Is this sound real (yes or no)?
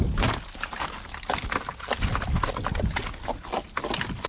yes